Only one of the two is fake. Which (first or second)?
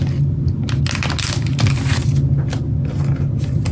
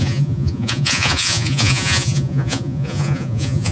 second